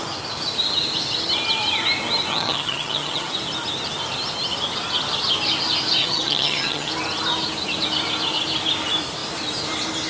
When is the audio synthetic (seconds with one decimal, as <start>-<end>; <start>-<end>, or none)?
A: 2.3-3.3; 6.0-6.9